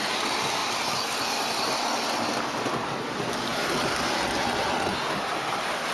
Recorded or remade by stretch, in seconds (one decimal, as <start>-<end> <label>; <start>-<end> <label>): 0.0-5.9 recorded